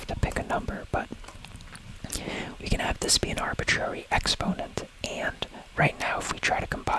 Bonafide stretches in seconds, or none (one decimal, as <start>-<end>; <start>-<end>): none